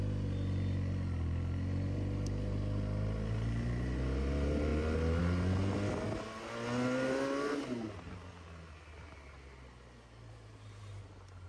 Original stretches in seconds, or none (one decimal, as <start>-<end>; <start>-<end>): 0.0-11.5